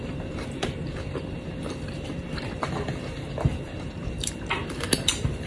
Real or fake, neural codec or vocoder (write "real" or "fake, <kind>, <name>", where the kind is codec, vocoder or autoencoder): fake, vocoder, BigVGAN v2